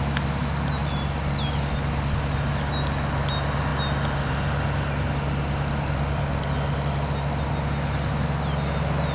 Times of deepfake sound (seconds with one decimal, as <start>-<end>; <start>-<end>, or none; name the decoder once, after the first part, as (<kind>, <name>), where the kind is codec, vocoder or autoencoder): none